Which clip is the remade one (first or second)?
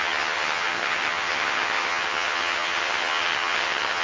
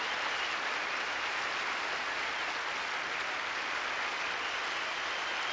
first